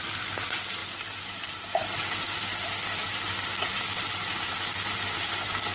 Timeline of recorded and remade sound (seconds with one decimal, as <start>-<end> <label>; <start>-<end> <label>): 0.0-5.7 recorded